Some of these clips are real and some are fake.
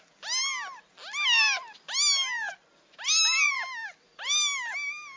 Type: real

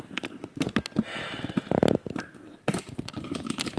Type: real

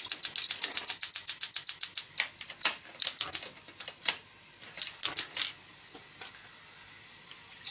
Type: real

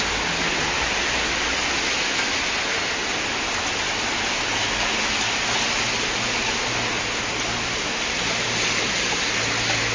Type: real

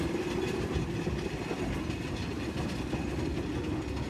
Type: real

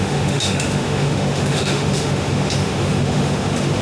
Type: fake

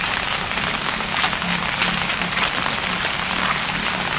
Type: real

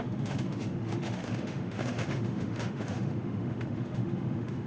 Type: fake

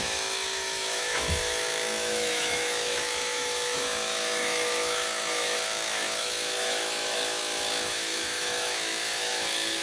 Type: fake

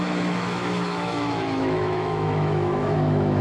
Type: fake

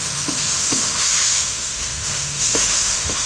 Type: fake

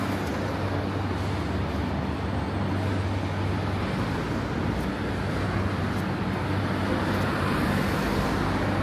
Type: real